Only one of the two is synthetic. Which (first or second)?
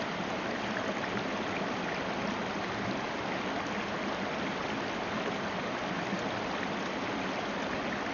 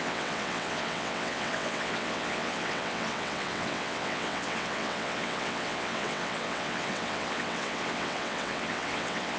second